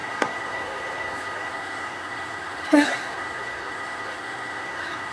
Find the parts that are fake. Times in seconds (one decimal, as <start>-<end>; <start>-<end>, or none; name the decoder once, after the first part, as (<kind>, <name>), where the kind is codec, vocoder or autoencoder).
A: 0.0-5.1 (codec, SNAC)